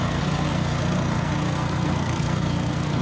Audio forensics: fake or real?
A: fake